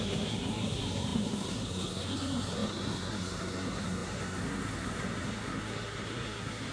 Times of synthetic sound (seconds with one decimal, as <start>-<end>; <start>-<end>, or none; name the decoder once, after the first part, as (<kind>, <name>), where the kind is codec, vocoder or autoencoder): 0.0-6.7 (codec, SNAC)